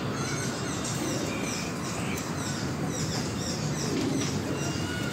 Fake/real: real